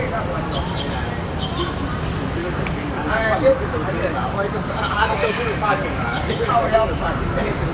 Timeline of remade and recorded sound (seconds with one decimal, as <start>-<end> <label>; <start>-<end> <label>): 0.0-2.4 recorded; 2.4-6.3 remade; 6.3-7.7 recorded